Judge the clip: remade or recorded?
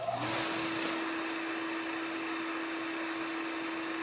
recorded